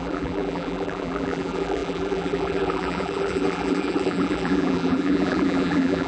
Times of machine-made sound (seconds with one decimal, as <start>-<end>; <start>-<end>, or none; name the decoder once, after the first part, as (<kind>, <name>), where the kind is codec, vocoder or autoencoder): 0.0-6.1 (vocoder, BigVGAN v2)